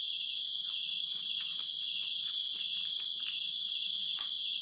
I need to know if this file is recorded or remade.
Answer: remade